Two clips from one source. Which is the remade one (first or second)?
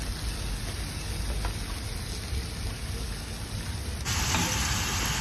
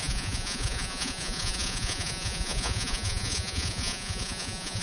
second